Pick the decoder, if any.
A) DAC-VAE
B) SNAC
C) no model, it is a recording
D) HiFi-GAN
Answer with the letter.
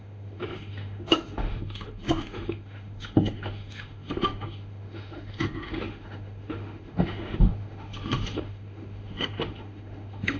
A